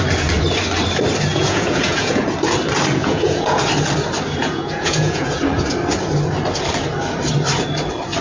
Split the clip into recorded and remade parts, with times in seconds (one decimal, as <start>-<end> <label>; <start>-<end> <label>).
0.0-1.3 recorded; 1.3-2.2 remade; 2.2-3.0 recorded; 3.0-3.7 remade; 3.7-4.4 recorded; 4.4-5.4 remade; 5.4-8.2 recorded